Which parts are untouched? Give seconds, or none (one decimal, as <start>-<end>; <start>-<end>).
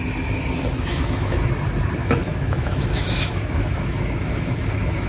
0.0-0.9; 1.5-2.0